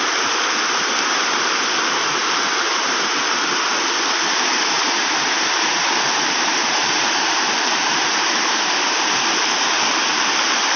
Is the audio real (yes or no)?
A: no